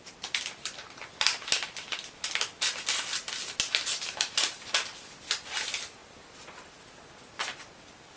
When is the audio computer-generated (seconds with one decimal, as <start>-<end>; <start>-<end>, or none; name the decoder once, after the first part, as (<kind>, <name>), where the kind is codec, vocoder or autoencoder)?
none

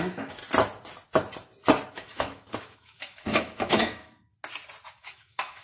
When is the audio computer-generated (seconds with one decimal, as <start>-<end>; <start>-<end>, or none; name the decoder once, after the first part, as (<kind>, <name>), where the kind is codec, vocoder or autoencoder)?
0.0-0.4 (autoencoder, DAC-VAE); 1.9-4.3; 5.0-5.6

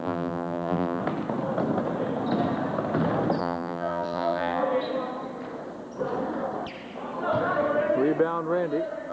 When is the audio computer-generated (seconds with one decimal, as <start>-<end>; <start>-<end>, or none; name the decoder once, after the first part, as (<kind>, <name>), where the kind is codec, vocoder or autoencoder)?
0.0-1.0 (vocoder, BigVGAN v2); 3.4-4.6

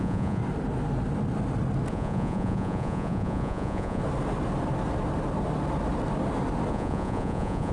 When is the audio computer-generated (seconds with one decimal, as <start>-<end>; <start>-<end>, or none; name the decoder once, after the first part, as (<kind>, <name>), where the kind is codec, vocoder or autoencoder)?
0.0-0.4 (vocoder, Vocos); 1.9-4.0; 6.7-7.7

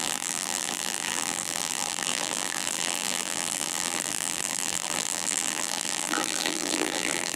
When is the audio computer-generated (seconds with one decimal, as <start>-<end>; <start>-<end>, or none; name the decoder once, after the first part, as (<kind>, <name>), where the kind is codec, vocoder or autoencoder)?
0.0-7.4 (vocoder, BigVGAN v2)

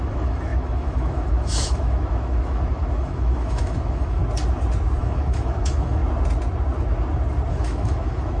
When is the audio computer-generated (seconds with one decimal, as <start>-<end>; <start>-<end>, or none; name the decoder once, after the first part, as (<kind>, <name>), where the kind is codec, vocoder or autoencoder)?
0.0-4.2 (autoencoder, DAC-VAE); 5.0-6.0; 7.5-8.4

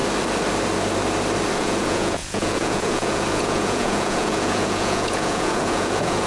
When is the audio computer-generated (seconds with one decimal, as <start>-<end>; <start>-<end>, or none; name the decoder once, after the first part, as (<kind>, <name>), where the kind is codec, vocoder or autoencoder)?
1.5-6.3 (vocoder, Vocos)

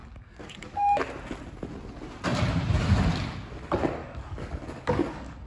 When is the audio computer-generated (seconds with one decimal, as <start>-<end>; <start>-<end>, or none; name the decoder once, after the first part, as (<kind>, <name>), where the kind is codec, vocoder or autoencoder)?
0.0-1.0 (codec, DAC); 4.0-5.5